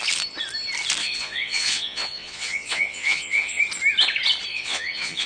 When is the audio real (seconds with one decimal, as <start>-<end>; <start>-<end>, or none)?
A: 0.0-1.0; 3.6-4.5